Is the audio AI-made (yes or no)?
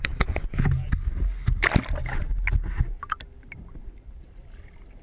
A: no